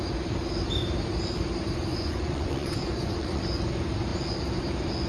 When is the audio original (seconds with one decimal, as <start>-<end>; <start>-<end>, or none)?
0.0-1.9; 3.4-5.1